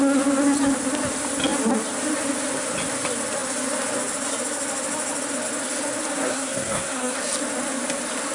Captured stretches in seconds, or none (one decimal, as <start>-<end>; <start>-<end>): 0.0-6.3; 7.2-8.3